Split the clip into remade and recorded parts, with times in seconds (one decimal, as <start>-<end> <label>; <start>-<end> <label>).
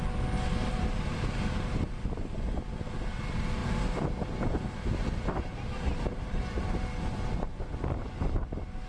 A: 0.0-0.7 recorded; 0.7-1.7 remade; 1.7-3.6 recorded; 3.6-6.6 remade; 6.6-8.9 recorded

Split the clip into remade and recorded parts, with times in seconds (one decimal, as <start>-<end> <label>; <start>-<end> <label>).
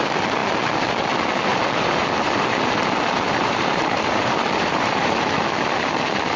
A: 0.0-1.5 recorded; 1.5-5.3 remade; 5.3-6.4 recorded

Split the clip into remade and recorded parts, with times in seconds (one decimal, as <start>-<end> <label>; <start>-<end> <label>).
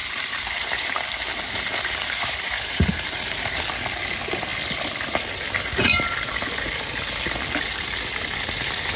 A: 0.0-3.6 remade; 3.6-9.0 recorded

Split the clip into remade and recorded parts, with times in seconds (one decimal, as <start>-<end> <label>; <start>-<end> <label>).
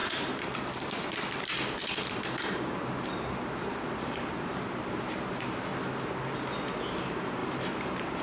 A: 0.0-5.7 remade; 5.7-7.0 recorded; 7.0-8.2 remade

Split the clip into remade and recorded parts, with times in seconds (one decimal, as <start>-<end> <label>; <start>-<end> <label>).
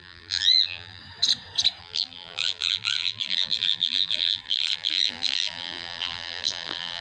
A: 0.0-1.0 remade; 1.0-1.8 recorded; 1.8-7.0 remade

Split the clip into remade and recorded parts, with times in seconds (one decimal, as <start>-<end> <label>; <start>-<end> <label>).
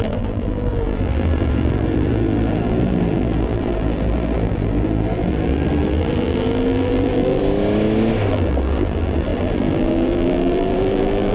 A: 0.0-7.4 remade; 7.4-8.3 recorded; 8.3-11.3 remade